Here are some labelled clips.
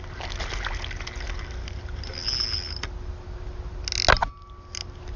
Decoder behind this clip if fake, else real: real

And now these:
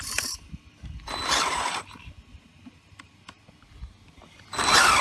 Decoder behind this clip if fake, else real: real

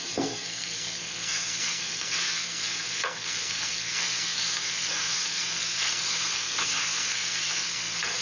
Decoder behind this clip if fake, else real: fake, codec, SNAC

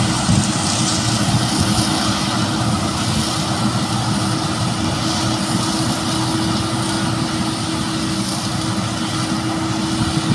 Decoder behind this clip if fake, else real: real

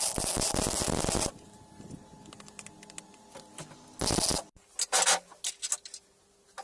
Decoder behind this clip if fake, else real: real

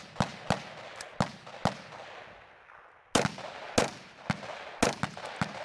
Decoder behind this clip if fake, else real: real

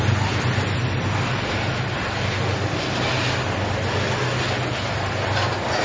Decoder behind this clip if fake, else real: real